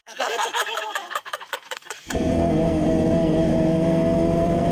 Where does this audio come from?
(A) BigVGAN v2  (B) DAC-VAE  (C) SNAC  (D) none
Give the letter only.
C